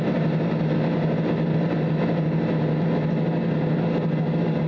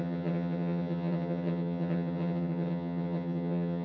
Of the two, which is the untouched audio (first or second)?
first